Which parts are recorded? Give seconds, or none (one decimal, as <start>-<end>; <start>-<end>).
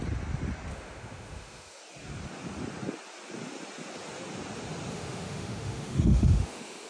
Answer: 0.0-0.7; 1.8-4.9